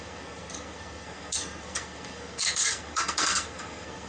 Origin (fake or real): fake